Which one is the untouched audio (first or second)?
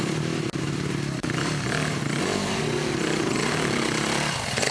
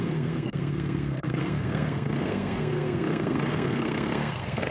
first